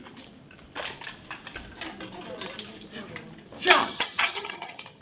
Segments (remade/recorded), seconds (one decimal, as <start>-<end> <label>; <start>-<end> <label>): 0.0-3.8 recorded; 3.8-5.0 remade